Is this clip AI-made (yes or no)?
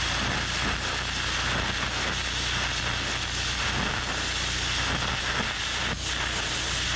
no